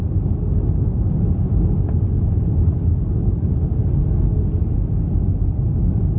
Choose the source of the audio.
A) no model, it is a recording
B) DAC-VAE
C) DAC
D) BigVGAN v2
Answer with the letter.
A